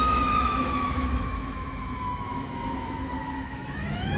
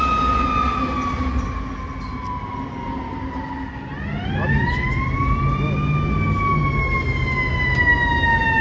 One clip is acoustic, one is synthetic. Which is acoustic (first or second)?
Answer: second